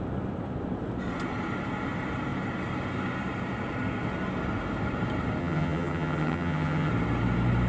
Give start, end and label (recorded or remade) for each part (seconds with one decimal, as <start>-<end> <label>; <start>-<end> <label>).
0.0-5.4 recorded; 5.4-6.9 remade; 6.9-7.7 recorded